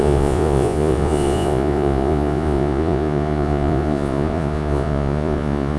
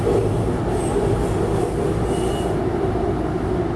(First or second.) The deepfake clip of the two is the first